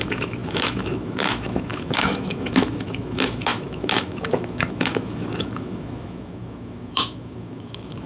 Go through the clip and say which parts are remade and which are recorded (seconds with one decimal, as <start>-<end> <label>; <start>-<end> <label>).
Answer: 0.0-8.1 remade